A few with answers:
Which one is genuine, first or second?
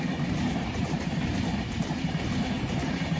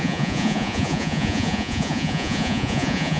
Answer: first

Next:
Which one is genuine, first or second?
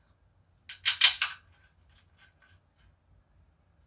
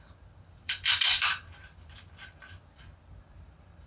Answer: first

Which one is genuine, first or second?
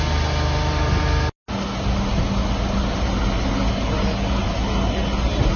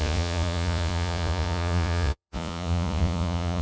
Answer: first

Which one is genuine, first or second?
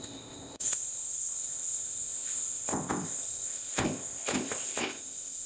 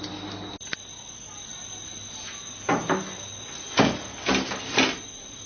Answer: second